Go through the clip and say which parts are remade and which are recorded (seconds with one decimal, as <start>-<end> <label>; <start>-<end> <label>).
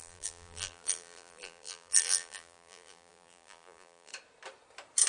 0.0-4.1 remade; 4.1-5.1 recorded